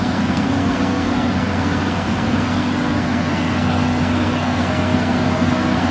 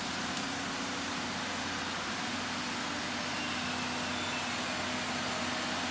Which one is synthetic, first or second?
first